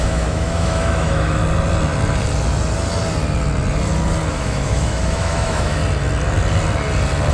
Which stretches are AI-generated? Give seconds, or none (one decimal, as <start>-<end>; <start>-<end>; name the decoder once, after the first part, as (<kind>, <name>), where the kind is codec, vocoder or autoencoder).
0.0-1.4 (autoencoder, DAC-VAE); 4.3-5.8